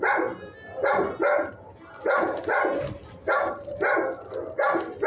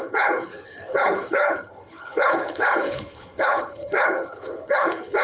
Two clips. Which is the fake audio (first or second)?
second